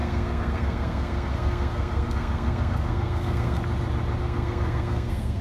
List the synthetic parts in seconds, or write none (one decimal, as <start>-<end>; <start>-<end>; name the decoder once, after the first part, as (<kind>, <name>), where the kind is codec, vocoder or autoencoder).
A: 0.0-3.6 (codec, SNAC); 4.2-5.4